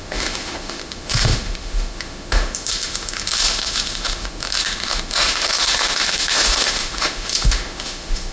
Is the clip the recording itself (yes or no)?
no